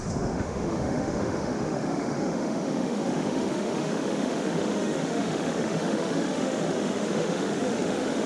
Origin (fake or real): fake